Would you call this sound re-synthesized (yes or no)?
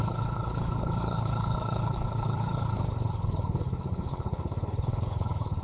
yes